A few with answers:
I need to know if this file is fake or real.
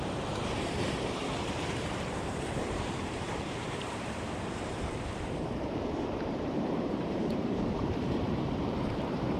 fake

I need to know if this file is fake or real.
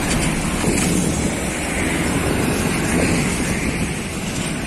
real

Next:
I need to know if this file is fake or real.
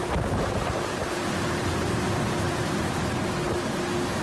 real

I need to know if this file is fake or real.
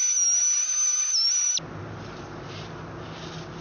real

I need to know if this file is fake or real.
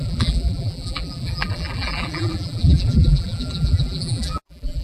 fake